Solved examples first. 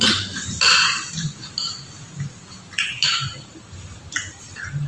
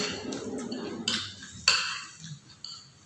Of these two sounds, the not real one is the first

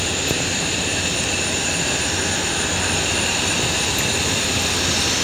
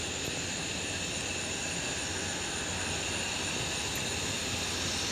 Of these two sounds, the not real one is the first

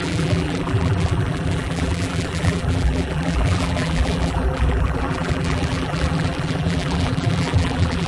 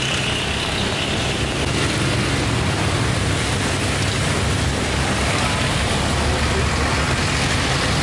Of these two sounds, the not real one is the first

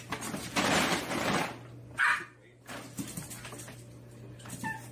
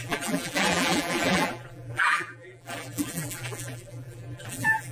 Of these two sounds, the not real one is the second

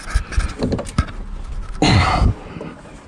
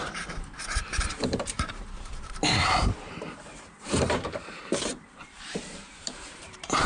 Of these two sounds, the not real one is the second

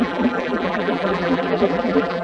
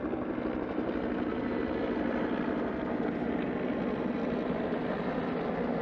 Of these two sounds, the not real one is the first